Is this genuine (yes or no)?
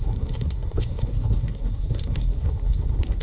no